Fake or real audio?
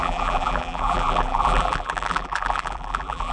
fake